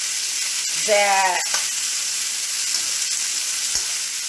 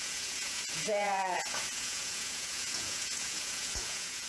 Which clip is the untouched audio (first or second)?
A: first